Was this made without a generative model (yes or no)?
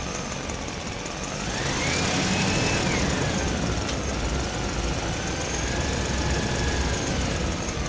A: yes